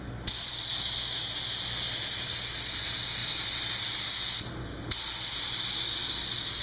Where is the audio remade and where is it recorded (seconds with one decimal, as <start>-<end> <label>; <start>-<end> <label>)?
0.0-6.6 recorded